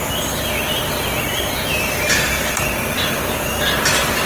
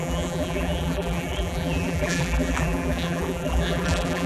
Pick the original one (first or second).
first